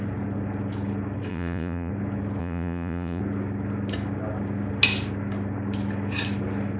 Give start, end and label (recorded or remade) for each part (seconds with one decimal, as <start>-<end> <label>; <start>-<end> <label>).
0.0-1.3 recorded; 1.3-1.9 remade; 1.9-2.4 recorded; 2.4-3.2 remade; 3.2-6.8 recorded